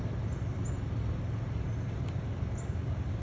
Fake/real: real